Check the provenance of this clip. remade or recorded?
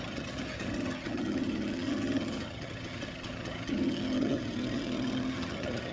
remade